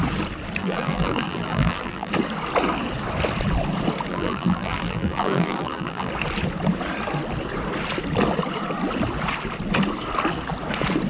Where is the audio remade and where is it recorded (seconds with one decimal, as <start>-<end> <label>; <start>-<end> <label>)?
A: 0.0-0.6 recorded; 0.6-2.1 remade; 2.1-4.1 recorded; 4.1-6.1 remade; 6.1-11.1 recorded